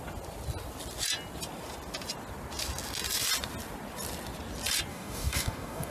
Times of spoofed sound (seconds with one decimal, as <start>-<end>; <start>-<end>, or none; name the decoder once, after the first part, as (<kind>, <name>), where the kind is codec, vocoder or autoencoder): 4.9-5.9 (codec, DAC)